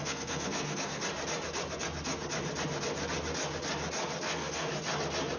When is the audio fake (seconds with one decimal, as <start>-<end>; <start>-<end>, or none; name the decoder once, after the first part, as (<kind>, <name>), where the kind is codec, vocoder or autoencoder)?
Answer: 0.0-1.0 (codec, SNAC); 4.2-4.7